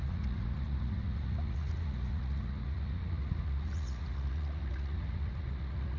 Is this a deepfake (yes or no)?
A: yes